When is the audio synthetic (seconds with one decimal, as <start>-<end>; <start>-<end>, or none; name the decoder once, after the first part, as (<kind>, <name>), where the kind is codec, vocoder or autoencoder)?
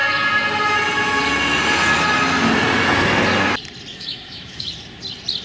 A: 3.9-4.7 (autoencoder, DAC-VAE)